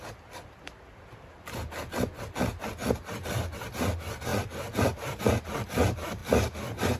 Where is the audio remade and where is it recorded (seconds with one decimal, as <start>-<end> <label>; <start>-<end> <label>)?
0.0-7.0 recorded